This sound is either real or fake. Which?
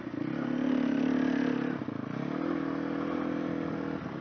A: real